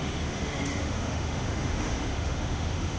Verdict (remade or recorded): remade